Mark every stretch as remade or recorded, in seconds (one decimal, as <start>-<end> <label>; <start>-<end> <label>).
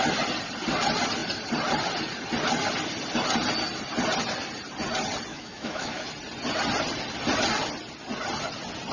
0.0-5.3 recorded; 5.3-6.1 remade; 6.1-8.9 recorded